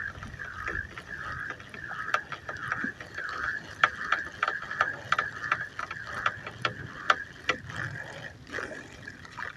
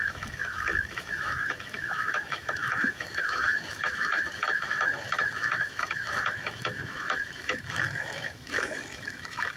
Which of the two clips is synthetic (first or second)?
second